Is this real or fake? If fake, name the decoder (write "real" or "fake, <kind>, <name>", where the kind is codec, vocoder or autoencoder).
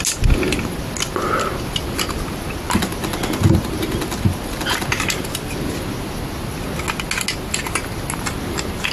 real